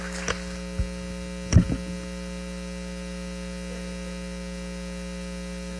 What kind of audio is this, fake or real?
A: real